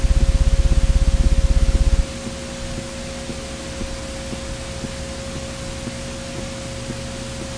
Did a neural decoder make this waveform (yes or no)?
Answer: no